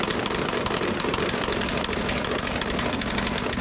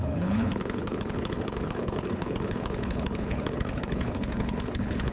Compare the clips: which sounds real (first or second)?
first